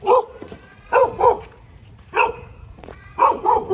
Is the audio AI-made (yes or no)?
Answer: yes